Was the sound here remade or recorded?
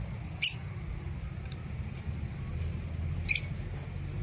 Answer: recorded